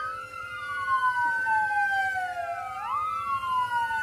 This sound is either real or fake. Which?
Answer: real